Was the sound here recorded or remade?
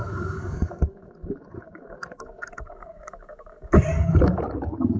remade